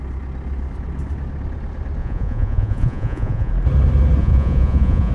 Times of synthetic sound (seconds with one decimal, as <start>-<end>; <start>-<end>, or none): 2.0-3.5; 4.2-5.1